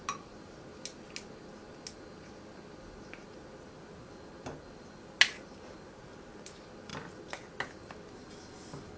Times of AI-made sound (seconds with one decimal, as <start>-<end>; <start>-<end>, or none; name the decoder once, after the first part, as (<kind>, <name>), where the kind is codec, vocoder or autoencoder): none